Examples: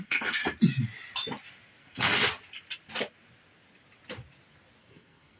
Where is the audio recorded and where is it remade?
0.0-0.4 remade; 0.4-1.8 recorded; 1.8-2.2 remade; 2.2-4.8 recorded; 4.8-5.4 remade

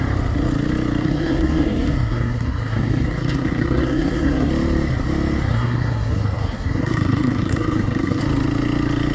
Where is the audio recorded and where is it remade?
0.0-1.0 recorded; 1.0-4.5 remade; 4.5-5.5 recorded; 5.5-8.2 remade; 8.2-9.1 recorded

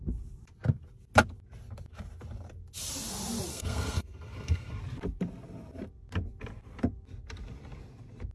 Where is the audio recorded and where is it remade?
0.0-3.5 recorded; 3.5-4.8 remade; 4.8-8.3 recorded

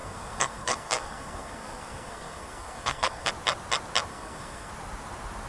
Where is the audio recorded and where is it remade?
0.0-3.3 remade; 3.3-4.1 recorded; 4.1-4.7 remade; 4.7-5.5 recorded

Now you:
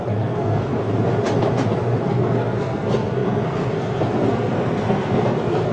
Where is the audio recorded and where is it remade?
0.0-0.7 remade; 0.7-1.7 recorded; 1.7-5.7 remade

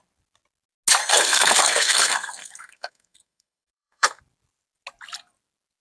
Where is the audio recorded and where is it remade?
0.0-1.0 recorded; 1.0-4.2 remade; 4.2-5.8 recorded

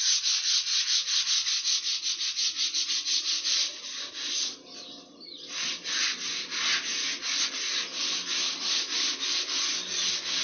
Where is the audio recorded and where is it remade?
0.0-10.4 recorded

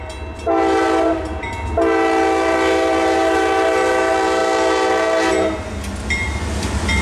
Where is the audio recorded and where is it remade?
0.0-7.0 recorded